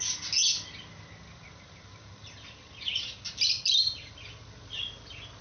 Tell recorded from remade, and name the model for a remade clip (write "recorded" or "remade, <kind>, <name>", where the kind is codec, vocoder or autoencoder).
recorded